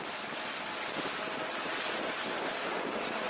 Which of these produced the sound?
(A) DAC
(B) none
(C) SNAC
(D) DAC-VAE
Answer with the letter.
B